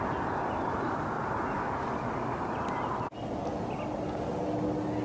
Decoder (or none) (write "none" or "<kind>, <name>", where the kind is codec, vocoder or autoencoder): none